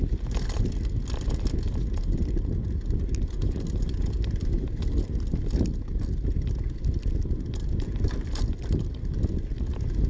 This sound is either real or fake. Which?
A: real